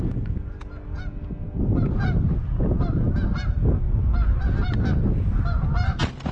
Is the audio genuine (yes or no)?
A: yes